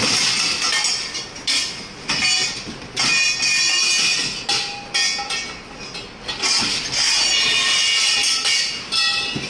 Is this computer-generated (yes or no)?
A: no